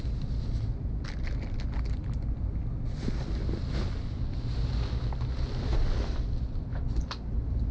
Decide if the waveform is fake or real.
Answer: real